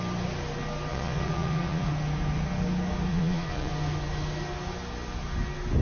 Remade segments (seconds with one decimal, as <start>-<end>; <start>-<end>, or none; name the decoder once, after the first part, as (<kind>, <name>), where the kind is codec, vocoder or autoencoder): 0.9-1.9 (vocoder, Vocos); 3.1-3.7